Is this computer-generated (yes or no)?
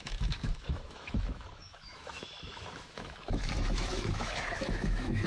yes